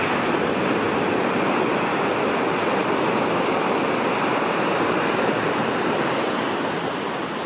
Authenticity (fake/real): real